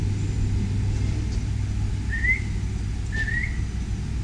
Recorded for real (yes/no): yes